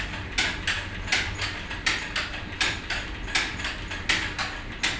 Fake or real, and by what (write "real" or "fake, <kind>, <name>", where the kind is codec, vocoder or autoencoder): real